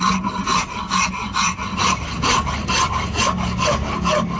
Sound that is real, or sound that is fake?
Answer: real